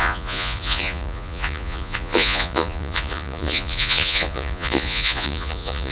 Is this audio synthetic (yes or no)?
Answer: yes